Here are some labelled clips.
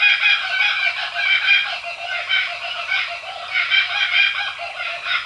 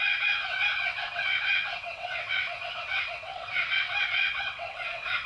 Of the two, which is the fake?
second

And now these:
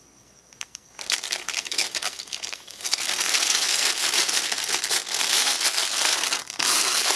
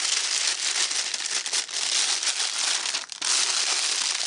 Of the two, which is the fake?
first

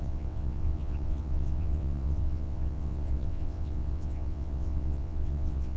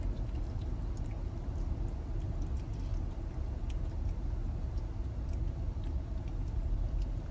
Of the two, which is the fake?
first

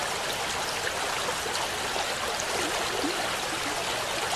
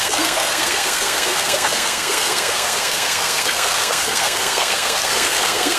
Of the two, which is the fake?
second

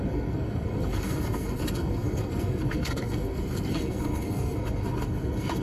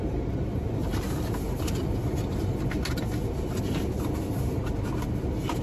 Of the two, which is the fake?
first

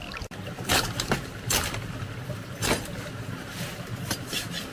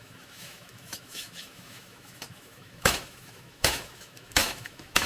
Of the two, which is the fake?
second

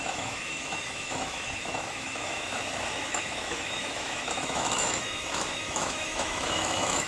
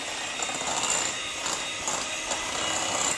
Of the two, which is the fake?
first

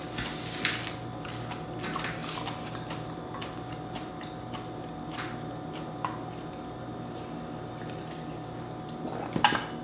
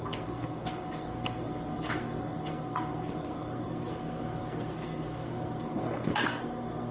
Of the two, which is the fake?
second